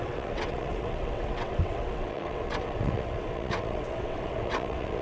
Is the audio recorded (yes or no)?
no